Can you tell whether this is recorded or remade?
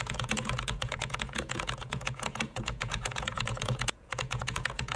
remade